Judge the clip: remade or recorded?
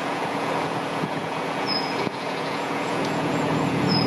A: remade